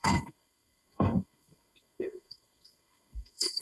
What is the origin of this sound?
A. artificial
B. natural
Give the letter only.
A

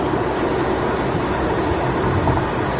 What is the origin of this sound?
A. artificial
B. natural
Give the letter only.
B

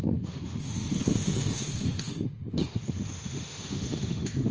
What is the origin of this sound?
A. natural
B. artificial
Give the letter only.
B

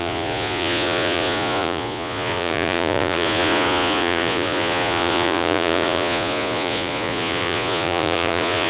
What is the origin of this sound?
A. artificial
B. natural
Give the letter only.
A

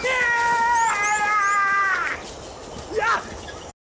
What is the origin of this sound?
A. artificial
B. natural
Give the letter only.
B